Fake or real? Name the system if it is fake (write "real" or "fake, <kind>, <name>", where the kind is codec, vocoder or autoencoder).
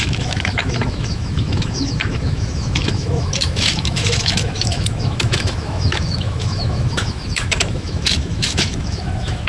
fake, autoencoder, DAC-VAE